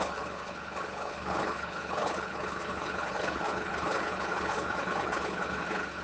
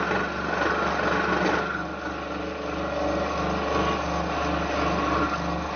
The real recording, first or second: second